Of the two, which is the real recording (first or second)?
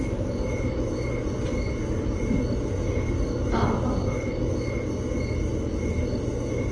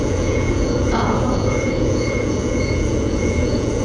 first